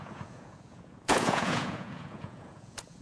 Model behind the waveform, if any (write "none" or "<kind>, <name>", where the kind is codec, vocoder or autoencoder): vocoder, Vocos